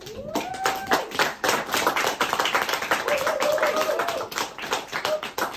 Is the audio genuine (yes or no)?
yes